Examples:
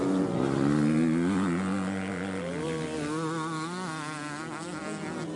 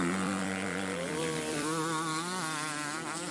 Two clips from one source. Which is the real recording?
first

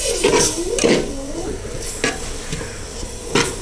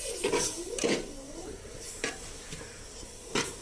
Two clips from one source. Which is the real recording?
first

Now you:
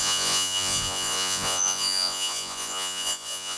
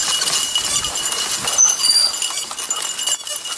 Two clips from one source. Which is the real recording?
second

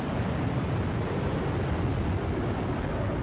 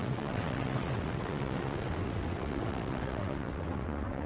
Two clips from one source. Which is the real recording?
first